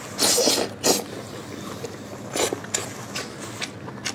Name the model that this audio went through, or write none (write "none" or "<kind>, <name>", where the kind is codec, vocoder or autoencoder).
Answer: none